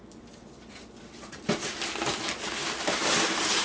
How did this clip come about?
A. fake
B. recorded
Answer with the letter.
B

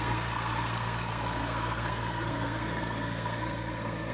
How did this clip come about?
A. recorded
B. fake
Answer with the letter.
B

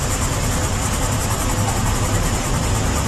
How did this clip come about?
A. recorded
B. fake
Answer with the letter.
A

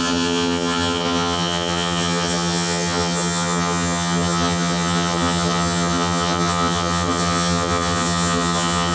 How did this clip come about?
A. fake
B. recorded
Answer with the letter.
A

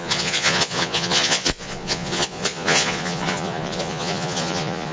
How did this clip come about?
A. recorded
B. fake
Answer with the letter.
B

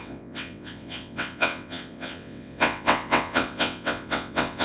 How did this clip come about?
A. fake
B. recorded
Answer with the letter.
A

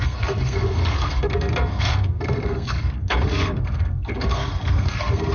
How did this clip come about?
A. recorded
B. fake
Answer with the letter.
B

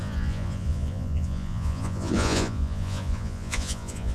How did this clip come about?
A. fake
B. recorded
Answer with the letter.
A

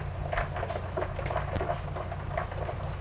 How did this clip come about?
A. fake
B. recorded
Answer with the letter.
B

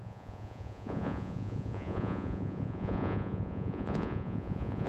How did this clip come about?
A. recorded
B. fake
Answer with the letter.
B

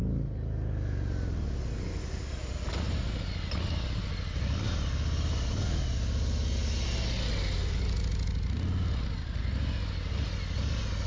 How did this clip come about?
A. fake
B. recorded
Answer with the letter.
B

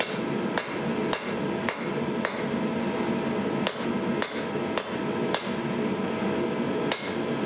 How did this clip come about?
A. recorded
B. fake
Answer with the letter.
A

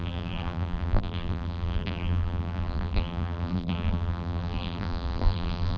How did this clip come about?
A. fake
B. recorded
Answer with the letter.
A